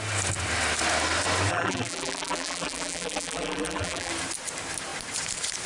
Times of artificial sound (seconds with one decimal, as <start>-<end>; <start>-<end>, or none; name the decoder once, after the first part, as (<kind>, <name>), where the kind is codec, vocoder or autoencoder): 1.5-4.1 (vocoder, BigVGAN v2)